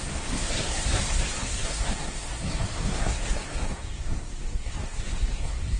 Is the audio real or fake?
fake